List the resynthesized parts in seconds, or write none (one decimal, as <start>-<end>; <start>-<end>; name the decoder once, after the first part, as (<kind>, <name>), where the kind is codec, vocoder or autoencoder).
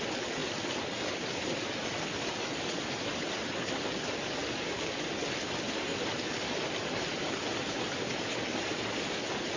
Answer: none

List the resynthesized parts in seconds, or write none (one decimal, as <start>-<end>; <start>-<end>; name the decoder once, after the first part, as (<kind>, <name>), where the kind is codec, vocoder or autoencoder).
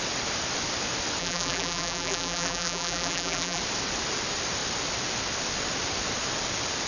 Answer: 1.2-3.6 (vocoder, BigVGAN v2)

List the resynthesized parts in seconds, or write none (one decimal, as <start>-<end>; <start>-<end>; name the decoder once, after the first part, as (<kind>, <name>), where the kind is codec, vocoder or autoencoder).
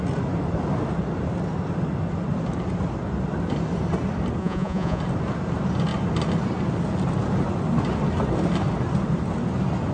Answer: 4.4-5.0 (vocoder, Vocos)